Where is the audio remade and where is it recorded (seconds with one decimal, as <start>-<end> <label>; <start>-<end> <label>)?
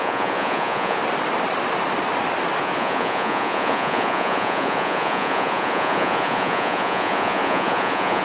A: 0.0-1.0 remade; 1.0-2.6 recorded; 2.6-8.2 remade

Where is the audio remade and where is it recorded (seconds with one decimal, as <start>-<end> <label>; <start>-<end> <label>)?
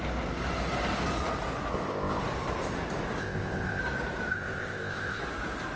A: 0.0-1.7 recorded; 1.7-2.2 remade; 2.2-3.2 recorded; 3.2-3.8 remade; 3.8-4.3 recorded; 4.3-5.2 remade; 5.2-5.8 recorded